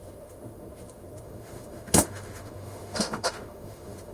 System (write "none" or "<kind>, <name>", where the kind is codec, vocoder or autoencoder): autoencoder, DAC-VAE